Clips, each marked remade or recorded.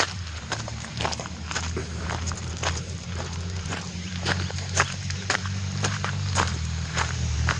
remade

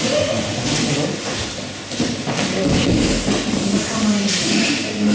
recorded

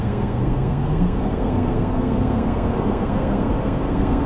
remade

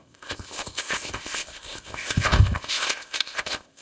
remade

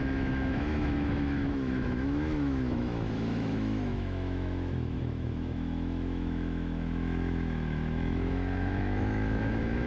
remade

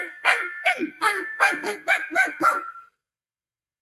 remade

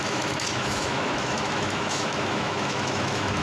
remade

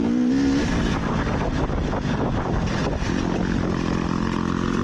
recorded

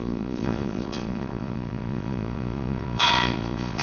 remade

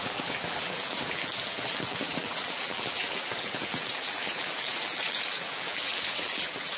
remade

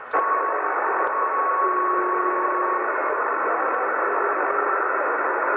recorded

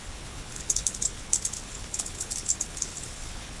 remade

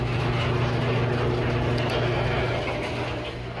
recorded